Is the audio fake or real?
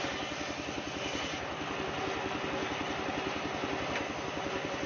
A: real